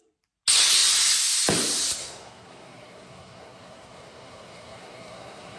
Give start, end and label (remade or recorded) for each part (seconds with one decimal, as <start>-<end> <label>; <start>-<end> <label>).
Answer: 0.0-2.0 recorded; 2.0-5.6 remade